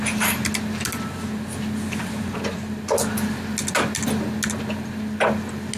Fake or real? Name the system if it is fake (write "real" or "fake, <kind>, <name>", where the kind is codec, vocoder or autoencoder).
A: real